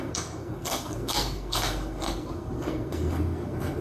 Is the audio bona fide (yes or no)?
no